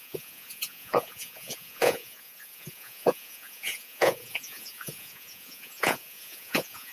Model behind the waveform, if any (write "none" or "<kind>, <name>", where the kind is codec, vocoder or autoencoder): vocoder, Vocos